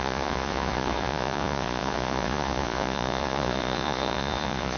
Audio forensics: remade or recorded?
remade